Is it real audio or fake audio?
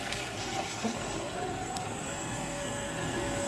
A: fake